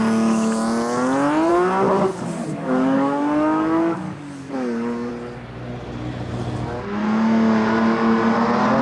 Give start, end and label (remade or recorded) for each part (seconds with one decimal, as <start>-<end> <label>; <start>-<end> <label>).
0.0-1.5 recorded; 1.5-5.1 remade; 5.1-8.8 recorded